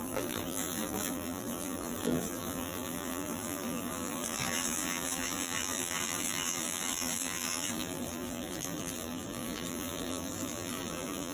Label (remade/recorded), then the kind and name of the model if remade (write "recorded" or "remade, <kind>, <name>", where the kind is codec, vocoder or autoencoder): remade, vocoder, BigVGAN v2